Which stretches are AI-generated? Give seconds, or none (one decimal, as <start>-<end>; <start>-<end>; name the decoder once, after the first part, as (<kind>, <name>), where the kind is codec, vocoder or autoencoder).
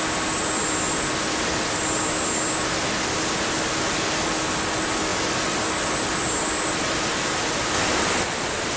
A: none